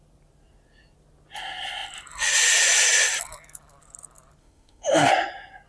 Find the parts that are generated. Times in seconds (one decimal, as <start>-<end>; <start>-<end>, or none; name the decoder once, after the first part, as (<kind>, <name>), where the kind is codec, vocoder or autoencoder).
4.4-5.1 (autoencoder, DAC-VAE)